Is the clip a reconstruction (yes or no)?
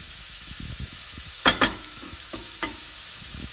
yes